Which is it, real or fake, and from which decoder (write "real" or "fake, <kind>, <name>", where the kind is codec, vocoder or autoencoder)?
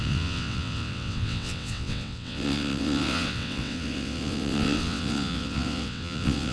fake, vocoder, WaveNeXt